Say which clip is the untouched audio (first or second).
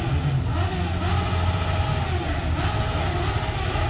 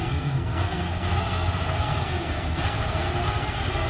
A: first